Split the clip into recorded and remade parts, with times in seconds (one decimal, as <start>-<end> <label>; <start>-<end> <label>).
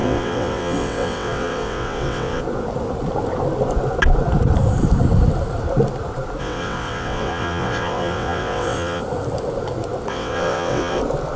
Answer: 0.0-2.4 remade; 2.4-6.4 recorded; 6.4-9.0 remade; 9.0-10.1 recorded; 10.1-11.0 remade; 11.0-11.4 recorded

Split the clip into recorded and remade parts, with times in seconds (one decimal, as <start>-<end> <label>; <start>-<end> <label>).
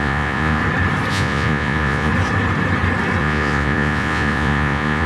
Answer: 0.0-0.6 remade; 0.6-1.1 recorded; 1.1-2.1 remade; 2.1-3.2 recorded; 3.2-5.1 remade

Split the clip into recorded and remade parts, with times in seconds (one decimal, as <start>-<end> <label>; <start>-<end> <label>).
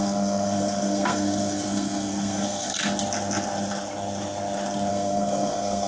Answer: 0.0-2.8 remade; 2.8-4.9 recorded; 4.9-5.9 remade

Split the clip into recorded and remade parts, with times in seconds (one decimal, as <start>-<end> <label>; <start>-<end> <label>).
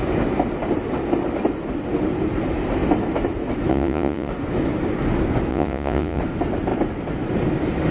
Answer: 0.0-3.7 recorded; 3.7-4.3 remade; 4.3-5.5 recorded; 5.5-6.2 remade; 6.2-7.9 recorded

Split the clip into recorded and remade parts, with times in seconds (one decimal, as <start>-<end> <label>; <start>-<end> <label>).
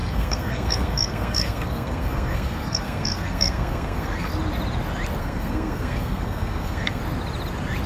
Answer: 0.0-4.3 remade; 4.3-5.2 recorded; 5.2-7.0 remade; 7.0-7.9 recorded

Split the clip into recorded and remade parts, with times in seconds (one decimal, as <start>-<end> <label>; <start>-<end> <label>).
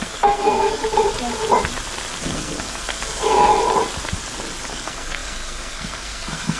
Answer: 0.0-0.8 remade; 0.8-2.2 recorded; 2.2-3.5 remade; 3.5-4.7 recorded; 4.7-6.6 remade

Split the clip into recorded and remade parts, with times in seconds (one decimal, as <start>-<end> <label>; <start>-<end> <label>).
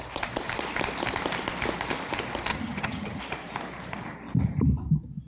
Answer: 0.0-2.5 recorded; 2.5-3.2 remade; 3.2-5.3 recorded